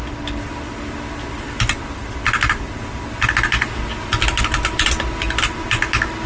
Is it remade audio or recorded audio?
recorded